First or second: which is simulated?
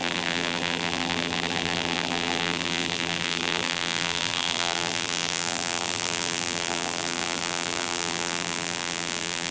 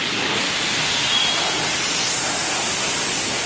first